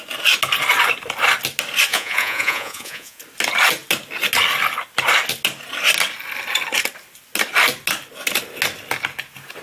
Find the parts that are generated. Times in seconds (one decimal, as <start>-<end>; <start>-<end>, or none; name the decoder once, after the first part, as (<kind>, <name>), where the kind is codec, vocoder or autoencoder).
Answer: 1.9-3.2 (vocoder, Vocos)